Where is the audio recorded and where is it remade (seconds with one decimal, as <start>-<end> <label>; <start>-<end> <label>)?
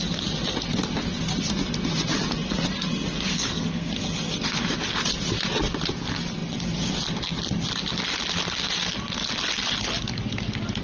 0.0-3.3 recorded; 3.3-3.9 remade; 3.9-10.8 recorded